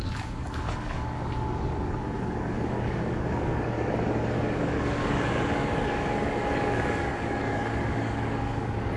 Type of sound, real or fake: fake